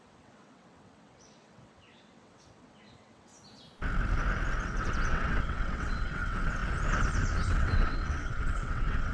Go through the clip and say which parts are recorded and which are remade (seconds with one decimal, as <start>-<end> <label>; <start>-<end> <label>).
0.0-3.3 remade; 3.3-4.6 recorded; 4.6-6.6 remade; 6.6-7.5 recorded; 7.5-9.1 remade

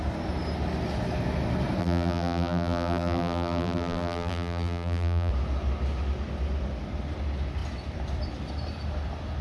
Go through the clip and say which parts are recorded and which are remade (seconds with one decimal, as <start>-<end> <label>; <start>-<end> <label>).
0.0-1.8 recorded; 1.8-5.3 remade; 5.3-9.4 recorded

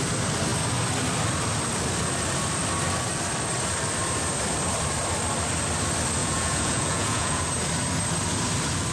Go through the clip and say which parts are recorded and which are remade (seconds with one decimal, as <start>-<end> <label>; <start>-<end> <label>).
0.0-6.2 recorded; 6.2-7.4 remade; 7.4-8.9 recorded

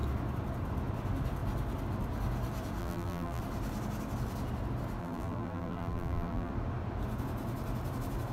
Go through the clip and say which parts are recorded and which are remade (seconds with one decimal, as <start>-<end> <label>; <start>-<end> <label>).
0.0-2.8 recorded; 2.8-3.4 remade; 3.4-5.0 recorded; 5.0-6.5 remade; 6.5-8.3 recorded

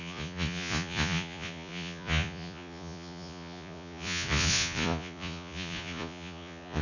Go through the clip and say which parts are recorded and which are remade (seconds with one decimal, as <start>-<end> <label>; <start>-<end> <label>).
0.0-6.8 remade

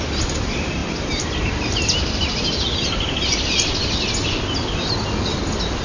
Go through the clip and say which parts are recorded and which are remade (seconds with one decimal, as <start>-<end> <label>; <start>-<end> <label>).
0.0-5.8 recorded

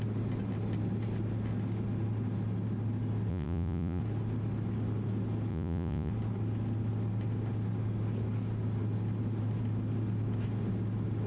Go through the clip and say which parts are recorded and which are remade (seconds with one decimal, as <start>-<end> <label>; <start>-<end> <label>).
0.0-3.3 recorded; 3.3-4.0 remade; 4.0-5.5 recorded; 5.5-6.1 remade; 6.1-11.3 recorded

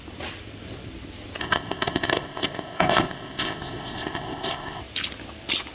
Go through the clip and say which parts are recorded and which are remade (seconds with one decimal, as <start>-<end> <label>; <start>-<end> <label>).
0.0-1.4 recorded; 1.4-4.8 remade; 4.8-5.7 recorded